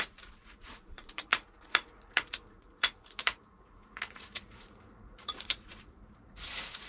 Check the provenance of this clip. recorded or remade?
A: remade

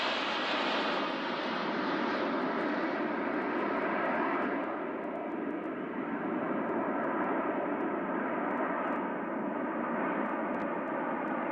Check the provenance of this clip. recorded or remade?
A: recorded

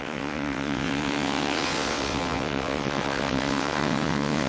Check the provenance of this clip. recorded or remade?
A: remade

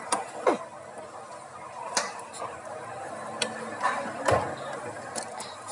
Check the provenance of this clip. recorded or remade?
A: recorded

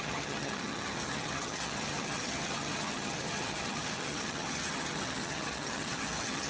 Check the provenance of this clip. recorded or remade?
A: remade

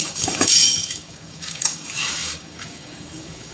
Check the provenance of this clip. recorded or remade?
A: remade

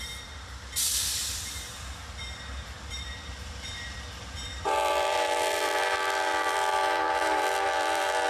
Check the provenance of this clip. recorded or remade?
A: remade